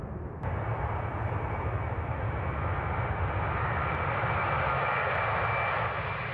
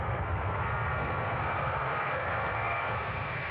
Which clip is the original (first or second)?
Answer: first